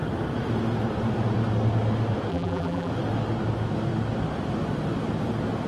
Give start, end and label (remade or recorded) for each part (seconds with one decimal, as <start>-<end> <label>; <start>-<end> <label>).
0.0-2.3 recorded; 2.3-2.9 remade; 2.9-5.7 recorded